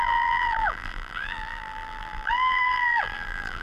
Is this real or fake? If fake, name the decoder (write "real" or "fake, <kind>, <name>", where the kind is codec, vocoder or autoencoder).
fake, vocoder, BigVGAN v2